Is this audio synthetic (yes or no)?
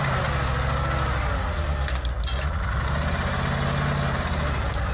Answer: no